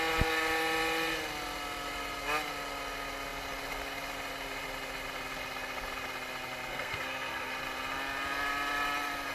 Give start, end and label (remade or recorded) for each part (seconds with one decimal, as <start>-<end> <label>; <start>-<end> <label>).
0.0-6.7 recorded; 6.7-7.5 remade; 7.5-9.3 recorded